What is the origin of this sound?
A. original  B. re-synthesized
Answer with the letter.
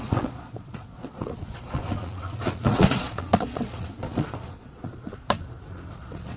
B